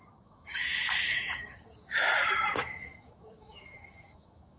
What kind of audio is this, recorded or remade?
remade